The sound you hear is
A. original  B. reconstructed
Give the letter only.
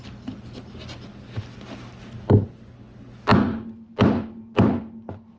A